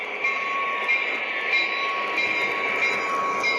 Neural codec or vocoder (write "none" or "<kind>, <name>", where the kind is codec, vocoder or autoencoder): none